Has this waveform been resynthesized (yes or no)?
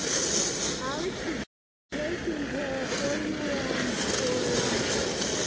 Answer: no